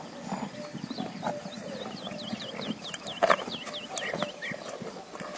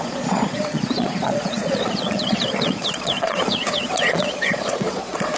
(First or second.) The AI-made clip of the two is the second